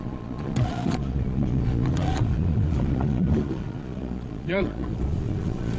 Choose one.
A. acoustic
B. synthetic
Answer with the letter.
B